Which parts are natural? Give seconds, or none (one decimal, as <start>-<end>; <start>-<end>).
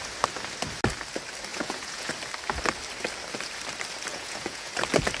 0.0-1.5; 2.1-4.1; 4.7-5.2